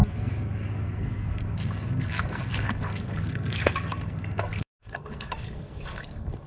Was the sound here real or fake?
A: fake